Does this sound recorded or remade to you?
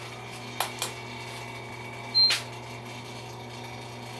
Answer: recorded